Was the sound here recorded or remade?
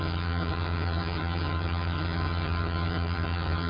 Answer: remade